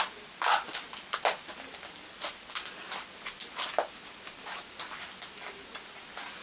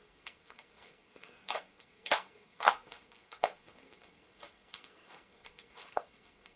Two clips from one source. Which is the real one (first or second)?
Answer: first